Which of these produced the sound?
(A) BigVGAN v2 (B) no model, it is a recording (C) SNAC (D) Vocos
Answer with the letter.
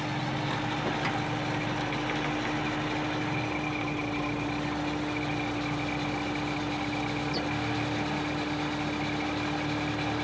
B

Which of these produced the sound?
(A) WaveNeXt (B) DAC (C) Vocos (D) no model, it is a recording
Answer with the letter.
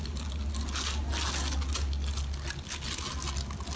D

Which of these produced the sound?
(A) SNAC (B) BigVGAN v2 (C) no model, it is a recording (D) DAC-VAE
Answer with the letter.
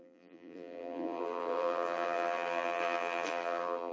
B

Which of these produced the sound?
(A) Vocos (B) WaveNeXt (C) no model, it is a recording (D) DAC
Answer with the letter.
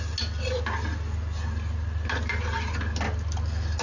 C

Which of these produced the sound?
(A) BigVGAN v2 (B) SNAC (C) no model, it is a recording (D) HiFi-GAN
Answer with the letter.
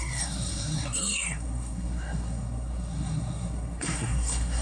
B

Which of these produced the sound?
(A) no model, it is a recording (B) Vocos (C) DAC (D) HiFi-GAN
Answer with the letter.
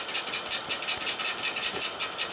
A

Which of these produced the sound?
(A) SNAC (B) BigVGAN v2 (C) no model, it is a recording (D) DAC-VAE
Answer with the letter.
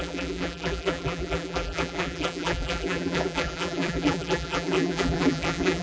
B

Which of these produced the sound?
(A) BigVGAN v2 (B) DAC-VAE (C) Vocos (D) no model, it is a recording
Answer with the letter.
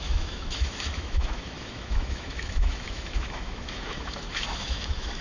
B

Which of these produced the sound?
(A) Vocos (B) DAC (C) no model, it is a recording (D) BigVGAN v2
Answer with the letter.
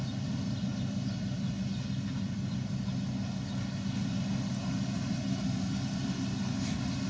C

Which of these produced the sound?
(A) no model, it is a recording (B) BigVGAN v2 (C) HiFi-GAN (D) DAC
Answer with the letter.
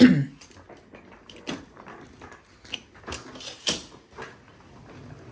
A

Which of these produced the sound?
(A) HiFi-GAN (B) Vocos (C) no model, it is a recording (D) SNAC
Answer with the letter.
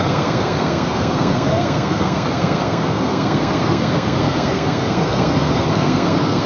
D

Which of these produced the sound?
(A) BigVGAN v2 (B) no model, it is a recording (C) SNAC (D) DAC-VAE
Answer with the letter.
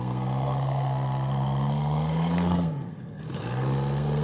C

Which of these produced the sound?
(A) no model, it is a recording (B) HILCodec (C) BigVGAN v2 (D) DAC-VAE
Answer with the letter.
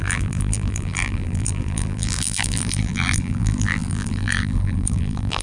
C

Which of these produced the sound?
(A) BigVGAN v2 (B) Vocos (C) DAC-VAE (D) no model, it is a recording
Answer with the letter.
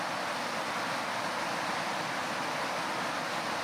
D